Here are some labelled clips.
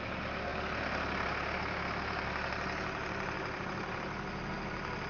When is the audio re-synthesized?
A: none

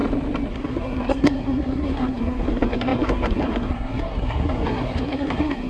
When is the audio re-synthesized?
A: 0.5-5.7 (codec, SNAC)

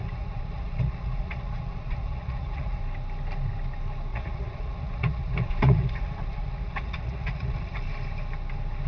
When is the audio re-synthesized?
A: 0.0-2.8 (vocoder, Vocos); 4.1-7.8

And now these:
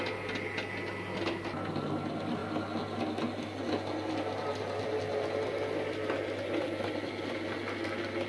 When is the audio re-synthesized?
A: none